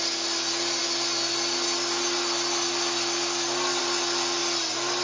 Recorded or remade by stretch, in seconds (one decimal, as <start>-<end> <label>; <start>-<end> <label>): 0.0-5.0 recorded